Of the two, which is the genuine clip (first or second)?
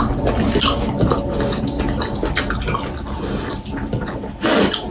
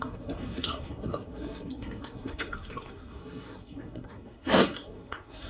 first